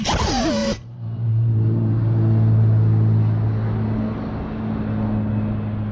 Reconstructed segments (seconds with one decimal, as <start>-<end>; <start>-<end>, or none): 0.6-2.2